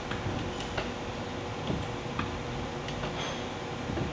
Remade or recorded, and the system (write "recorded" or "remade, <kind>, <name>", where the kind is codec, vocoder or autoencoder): recorded